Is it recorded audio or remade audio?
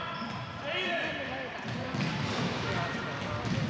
remade